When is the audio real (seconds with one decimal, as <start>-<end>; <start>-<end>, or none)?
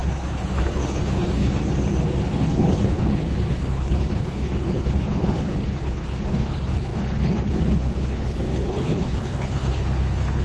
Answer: 1.6-2.3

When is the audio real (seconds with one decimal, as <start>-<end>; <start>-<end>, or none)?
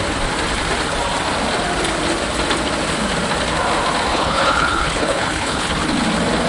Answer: 0.0-4.1; 5.7-6.5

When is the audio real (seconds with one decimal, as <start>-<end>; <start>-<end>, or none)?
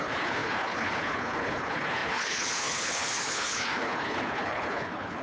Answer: none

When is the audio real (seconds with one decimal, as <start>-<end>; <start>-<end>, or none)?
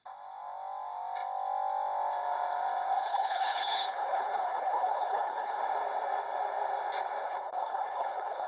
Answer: 0.0-3.0; 5.6-7.2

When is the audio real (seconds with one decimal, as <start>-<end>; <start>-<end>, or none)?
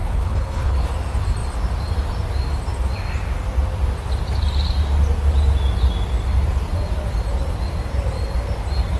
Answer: 0.9-9.0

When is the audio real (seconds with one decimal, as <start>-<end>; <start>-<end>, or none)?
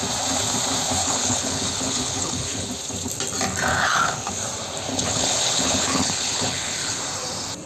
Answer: 0.0-1.0; 2.7-3.7; 4.3-4.9; 7.0-7.7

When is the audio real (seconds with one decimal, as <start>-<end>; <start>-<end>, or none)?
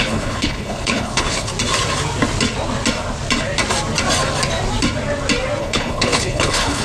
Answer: 1.5-5.6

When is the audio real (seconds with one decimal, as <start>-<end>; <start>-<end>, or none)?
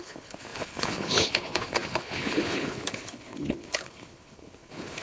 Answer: none